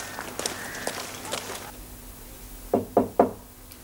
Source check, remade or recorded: recorded